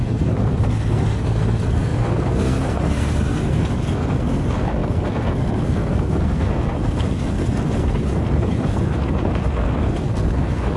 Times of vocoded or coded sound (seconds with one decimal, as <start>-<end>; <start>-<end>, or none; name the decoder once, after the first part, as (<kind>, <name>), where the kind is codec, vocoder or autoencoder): 0.0-10.8 (codec, SNAC)